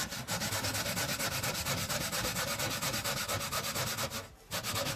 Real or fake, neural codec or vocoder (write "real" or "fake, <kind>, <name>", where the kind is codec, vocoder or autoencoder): real